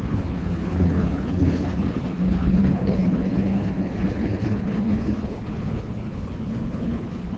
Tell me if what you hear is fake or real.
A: fake